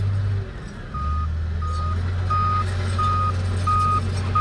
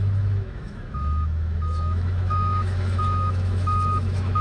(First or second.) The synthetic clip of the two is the second